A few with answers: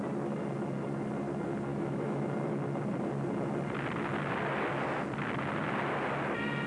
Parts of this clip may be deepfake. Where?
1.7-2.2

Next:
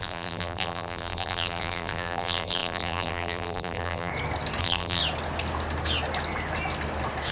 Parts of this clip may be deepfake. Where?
0.0-4.1; 4.6-5.0

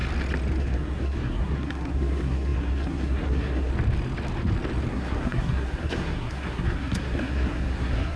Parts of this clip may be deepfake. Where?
0.6-3.7; 4.9-8.2